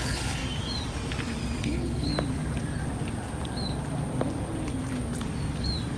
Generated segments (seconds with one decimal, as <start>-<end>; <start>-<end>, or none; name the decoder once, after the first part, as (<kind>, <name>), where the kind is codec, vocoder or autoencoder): 0.0-0.4 (codec, HILCodec); 1.6-2.1

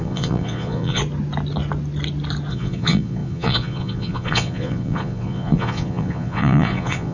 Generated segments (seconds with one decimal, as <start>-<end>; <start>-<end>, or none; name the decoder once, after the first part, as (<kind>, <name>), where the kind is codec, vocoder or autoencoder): 0.0-1.0 (vocoder, Vocos); 2.5-7.1

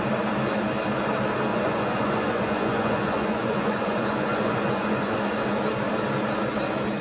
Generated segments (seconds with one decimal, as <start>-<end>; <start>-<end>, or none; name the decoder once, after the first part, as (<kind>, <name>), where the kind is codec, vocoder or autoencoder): 1.5-5.2 (vocoder, Vocos)

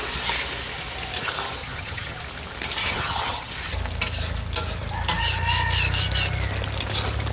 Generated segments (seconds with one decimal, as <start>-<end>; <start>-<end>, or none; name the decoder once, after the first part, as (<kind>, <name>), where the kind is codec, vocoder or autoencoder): 1.6-2.2 (vocoder, HiFi-GAN); 2.8-3.5

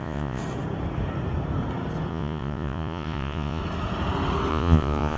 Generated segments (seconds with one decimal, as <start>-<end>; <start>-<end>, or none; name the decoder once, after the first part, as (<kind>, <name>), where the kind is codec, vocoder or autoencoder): 0.0-0.4 (vocoder, Vocos); 2.1-3.6; 4.5-5.2